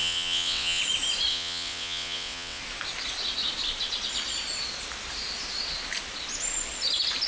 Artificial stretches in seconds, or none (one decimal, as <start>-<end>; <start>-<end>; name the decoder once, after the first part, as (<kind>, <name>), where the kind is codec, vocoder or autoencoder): 0.0-0.8 (vocoder, WaveNeXt); 1.3-2.6